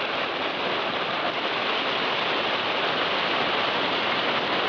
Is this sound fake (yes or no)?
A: no